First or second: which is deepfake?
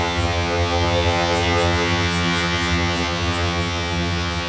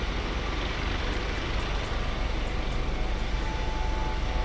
first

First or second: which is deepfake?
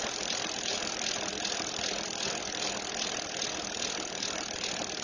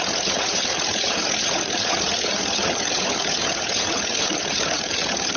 second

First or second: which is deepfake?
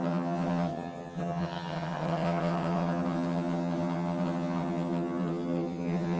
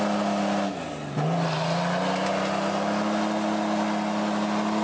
first